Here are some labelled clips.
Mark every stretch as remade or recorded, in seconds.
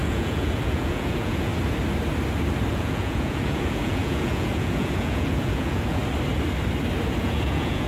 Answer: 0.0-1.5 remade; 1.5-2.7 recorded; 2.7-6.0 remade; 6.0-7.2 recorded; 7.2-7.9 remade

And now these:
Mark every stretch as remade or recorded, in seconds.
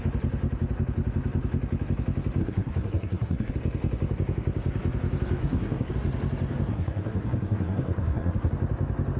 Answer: 0.0-2.4 recorded; 2.4-3.5 remade; 3.5-5.4 recorded; 5.4-5.9 remade; 5.9-6.7 recorded; 6.7-8.5 remade; 8.5-9.2 recorded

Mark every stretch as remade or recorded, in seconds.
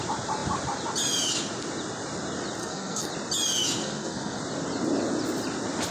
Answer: 0.0-2.6 recorded; 2.6-3.1 remade; 3.1-3.8 recorded; 3.8-4.4 remade; 4.4-5.9 recorded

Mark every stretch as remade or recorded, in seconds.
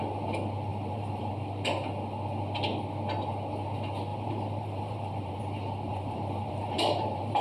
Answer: 0.0-0.7 recorded; 0.7-1.3 remade; 1.3-4.1 recorded; 4.1-5.4 remade; 5.4-5.9 recorded; 5.9-7.4 remade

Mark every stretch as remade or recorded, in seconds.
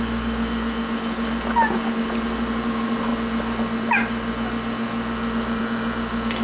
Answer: 0.0-6.4 recorded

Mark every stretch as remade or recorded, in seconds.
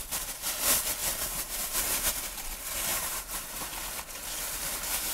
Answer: 0.0-1.0 recorded; 1.0-1.8 remade; 1.8-2.9 recorded; 2.9-3.7 remade; 3.7-5.1 recorded